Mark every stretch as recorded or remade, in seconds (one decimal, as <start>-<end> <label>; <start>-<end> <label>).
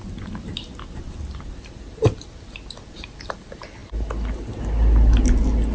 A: 0.0-5.7 recorded